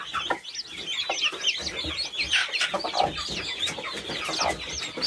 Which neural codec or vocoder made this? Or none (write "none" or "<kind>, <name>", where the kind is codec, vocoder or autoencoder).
none